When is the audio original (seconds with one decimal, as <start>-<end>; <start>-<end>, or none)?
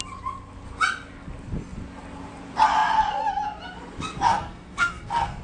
0.0-4.3